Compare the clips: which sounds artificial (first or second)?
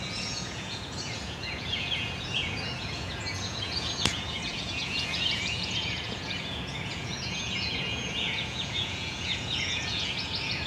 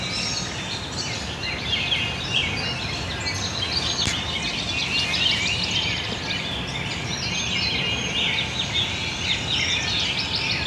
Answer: first